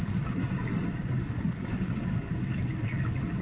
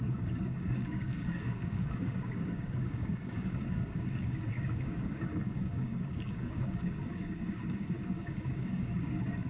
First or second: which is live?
first